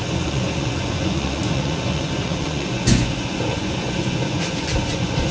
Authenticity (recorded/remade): remade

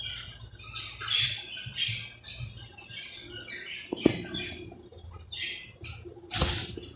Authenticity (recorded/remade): recorded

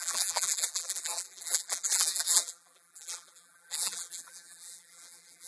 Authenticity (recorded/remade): remade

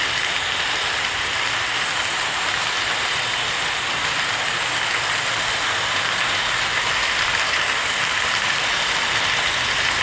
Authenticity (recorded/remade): recorded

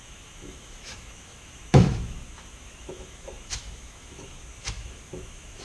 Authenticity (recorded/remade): remade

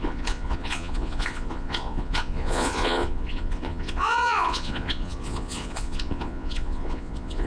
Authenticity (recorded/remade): remade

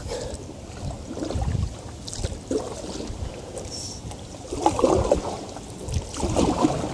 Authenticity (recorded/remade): recorded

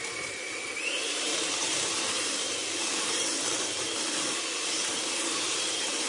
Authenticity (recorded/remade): remade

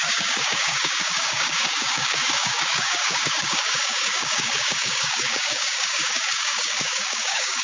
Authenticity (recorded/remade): remade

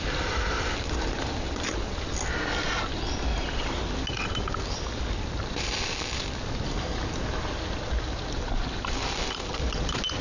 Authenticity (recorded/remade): recorded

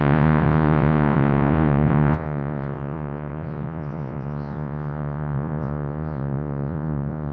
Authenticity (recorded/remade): remade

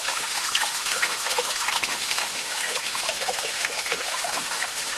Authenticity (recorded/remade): remade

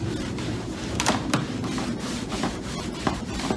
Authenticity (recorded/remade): remade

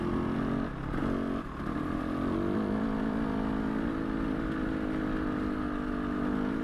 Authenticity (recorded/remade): recorded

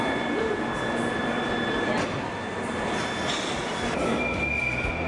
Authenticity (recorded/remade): recorded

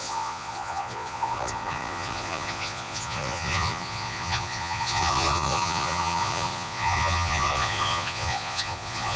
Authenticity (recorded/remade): remade